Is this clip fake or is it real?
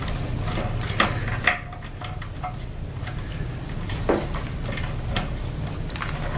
real